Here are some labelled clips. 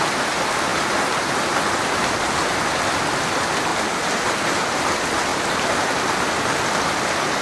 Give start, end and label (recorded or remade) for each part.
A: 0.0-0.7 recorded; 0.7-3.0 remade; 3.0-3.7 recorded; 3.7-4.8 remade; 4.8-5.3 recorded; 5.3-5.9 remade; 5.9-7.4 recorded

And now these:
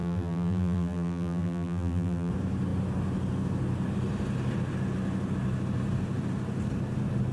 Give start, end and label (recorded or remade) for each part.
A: 0.0-2.3 remade; 2.3-7.3 recorded

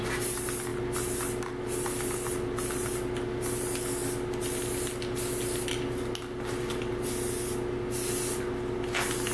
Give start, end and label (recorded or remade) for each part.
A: 0.0-9.3 recorded

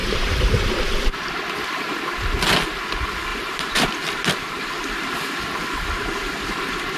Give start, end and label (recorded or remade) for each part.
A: 0.0-1.3 remade; 1.3-3.3 recorded; 3.3-3.9 remade; 3.9-7.0 recorded

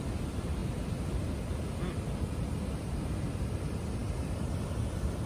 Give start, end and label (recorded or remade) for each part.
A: 0.0-5.3 recorded

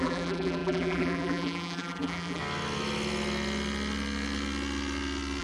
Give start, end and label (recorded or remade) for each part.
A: 0.0-2.4 remade; 2.4-5.4 recorded

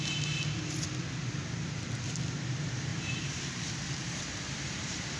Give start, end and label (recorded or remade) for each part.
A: 0.0-2.9 recorded; 2.9-5.2 remade

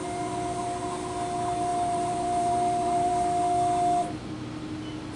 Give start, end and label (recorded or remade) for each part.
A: 0.0-1.7 recorded; 1.7-3.1 remade; 3.1-5.2 recorded